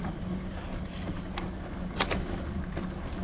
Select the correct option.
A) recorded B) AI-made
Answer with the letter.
A